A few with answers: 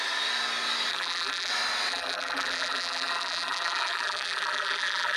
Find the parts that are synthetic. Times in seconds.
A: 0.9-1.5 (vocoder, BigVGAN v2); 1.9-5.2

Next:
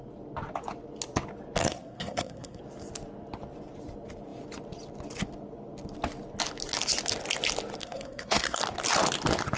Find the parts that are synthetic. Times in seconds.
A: 1.6-2.6 (codec, SNAC); 7.8-8.6

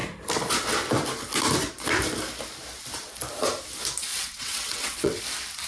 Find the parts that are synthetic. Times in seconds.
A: 4.1-5.2 (vocoder, WaveNeXt)

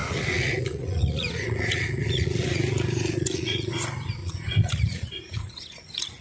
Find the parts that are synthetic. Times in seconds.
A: 0.0-3.7 (vocoder, Vocos); 4.2-6.2

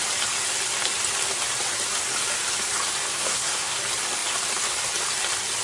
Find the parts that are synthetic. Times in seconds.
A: 3.1-3.8 (codec, SNAC)

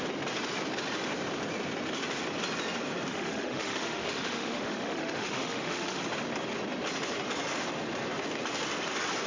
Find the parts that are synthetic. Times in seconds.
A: 3.1-6.0 (autoencoder, DAC-VAE)

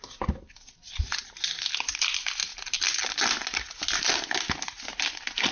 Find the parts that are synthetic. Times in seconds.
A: none

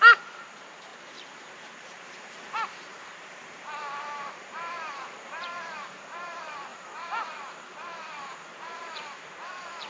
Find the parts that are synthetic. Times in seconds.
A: 0.0-9.9 (vocoder, BigVGAN v2)